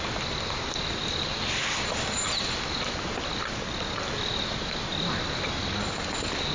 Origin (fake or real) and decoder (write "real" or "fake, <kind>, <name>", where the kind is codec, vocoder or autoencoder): real